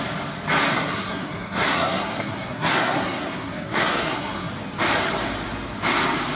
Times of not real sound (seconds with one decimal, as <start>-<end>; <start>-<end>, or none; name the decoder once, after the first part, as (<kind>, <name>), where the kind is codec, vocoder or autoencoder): 0.7-4.5 (codec, SNAC)